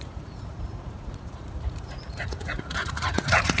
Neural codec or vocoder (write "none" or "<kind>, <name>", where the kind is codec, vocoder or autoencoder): vocoder, Vocos